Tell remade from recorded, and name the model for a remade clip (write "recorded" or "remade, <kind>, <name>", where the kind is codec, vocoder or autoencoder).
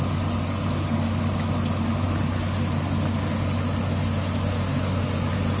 recorded